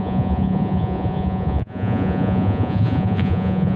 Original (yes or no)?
no